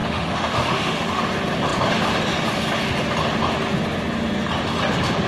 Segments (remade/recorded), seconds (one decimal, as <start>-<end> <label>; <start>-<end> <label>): 0.0-1.2 remade; 1.2-5.3 recorded